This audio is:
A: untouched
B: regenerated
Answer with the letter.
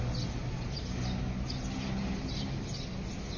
A